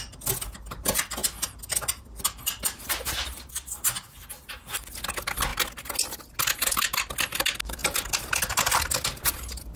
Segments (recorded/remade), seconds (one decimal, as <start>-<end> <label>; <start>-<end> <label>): 0.0-9.8 recorded

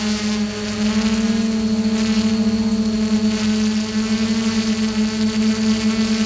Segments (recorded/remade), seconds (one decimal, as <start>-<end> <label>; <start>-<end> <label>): 0.0-6.3 recorded

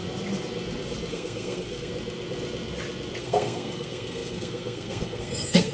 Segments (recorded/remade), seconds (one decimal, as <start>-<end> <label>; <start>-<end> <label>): 0.0-1.1 recorded; 1.1-1.9 remade; 1.9-3.2 recorded; 3.2-5.7 remade

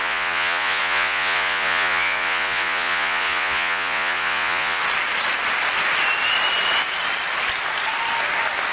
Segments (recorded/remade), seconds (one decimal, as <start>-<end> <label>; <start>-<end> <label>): 0.0-4.8 remade; 4.8-8.7 recorded